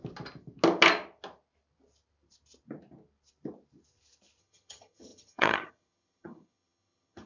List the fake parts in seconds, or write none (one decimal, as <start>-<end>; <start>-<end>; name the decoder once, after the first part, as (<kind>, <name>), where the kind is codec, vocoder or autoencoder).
4.4-7.3 (vocoder, HiFi-GAN)